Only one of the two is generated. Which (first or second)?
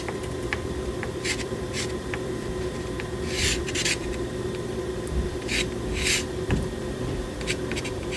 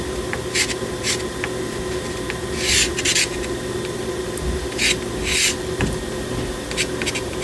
first